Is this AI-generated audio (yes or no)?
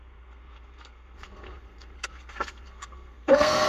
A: yes